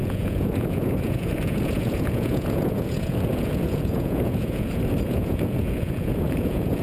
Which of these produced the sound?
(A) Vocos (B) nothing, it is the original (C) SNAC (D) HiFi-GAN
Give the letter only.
A